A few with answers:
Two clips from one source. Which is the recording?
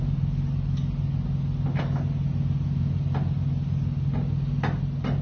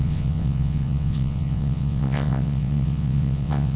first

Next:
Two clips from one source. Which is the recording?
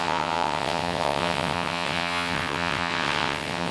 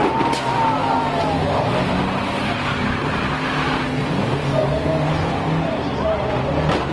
second